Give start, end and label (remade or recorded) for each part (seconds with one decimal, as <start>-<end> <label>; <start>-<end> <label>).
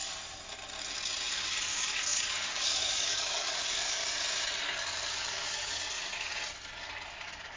0.0-1.3 recorded; 1.3-4.0 remade; 4.0-4.6 recorded; 4.6-6.3 remade; 6.3-7.1 recorded; 7.1-7.6 remade